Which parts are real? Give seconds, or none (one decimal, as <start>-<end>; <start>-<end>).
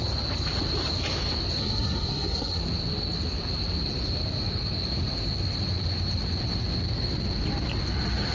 0.0-1.6; 2.6-8.3